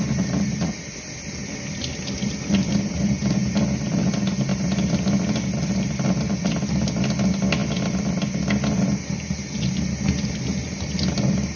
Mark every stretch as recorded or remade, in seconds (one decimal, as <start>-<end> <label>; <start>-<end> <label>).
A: 0.0-1.4 recorded; 1.4-1.9 remade; 1.9-4.5 recorded; 4.5-5.1 remade; 5.1-11.6 recorded